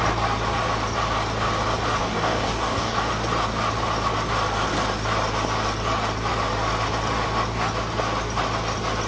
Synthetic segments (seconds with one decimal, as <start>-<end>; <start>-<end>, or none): 2.0-3.1